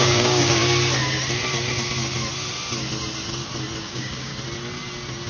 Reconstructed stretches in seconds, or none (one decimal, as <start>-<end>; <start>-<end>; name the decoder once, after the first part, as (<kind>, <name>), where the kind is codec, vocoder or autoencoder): 0.0-0.6 (codec, DAC); 3.8-4.3

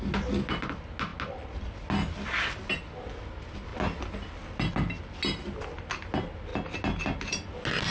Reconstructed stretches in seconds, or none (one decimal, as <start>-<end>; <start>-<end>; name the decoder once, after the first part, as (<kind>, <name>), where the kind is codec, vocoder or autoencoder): none

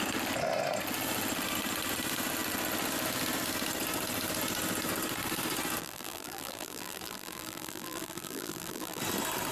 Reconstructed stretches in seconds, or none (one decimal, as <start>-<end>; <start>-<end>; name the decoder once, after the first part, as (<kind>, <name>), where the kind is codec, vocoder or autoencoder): 5.8-9.0 (vocoder, BigVGAN v2)

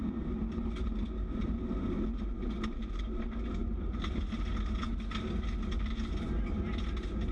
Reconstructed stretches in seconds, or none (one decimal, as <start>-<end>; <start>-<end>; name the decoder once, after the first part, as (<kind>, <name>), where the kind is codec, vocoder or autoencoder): none

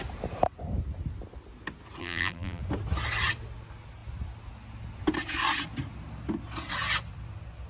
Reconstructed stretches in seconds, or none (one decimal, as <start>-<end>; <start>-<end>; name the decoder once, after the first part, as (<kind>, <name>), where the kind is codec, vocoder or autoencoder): 2.0-2.6 (vocoder, BigVGAN v2)

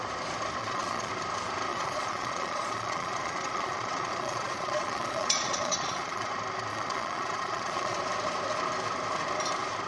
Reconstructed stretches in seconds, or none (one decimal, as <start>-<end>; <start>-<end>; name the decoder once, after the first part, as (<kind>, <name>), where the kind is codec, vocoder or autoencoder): 0.6-1.1 (vocoder, Vocos); 1.7-6.3; 6.7-8.0

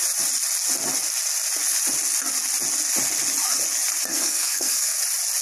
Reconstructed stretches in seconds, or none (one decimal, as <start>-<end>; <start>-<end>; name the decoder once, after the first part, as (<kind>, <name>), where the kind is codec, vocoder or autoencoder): 4.1-5.0 (codec, SNAC)